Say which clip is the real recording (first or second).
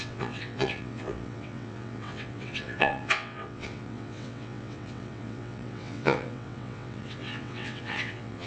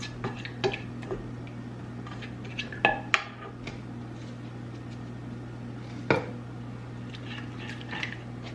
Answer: second